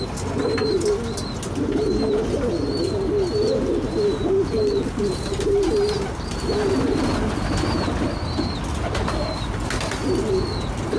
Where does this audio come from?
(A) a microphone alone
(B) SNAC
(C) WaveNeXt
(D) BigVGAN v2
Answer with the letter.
A